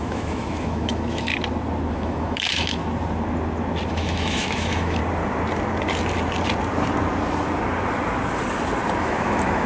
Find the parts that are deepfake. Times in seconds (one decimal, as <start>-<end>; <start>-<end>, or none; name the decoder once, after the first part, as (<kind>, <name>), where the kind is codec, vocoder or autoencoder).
0.0-1.3 (autoencoder, DAC-VAE); 1.9-2.8; 3.9-5.0; 9.0-9.7